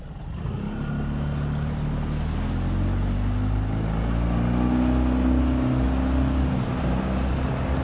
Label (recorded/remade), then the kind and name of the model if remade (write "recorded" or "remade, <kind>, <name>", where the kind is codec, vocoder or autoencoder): recorded